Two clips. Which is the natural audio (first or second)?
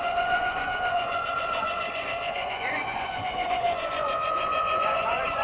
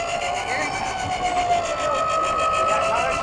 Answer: second